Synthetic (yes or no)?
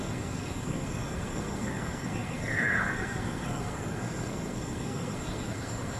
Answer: yes